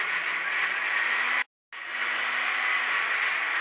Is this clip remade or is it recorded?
recorded